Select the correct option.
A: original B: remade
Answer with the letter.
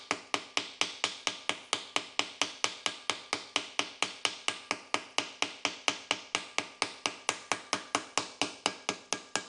A